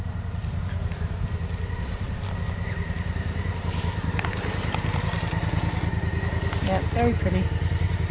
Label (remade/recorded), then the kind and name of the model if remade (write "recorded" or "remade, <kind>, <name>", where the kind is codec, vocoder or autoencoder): recorded